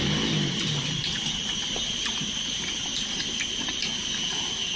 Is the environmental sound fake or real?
real